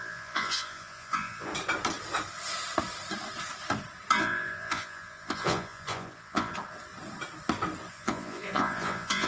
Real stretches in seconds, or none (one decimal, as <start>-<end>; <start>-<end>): 1.5-4.2; 6.5-7.9